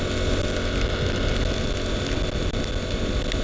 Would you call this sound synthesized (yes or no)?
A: no